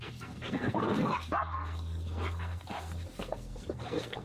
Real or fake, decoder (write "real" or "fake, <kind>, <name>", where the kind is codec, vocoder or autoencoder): fake, codec, SNAC